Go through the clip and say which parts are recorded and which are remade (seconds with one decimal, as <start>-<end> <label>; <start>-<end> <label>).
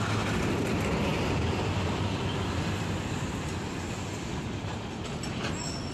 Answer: 0.0-5.9 recorded